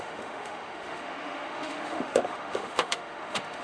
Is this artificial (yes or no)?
yes